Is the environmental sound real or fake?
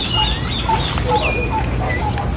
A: real